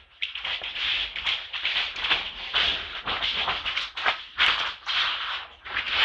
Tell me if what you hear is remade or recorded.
recorded